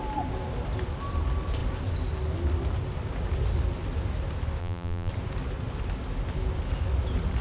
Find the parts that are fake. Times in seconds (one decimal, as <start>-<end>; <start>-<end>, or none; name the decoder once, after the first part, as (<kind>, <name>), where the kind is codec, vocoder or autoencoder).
4.6-5.1 (vocoder, BigVGAN v2)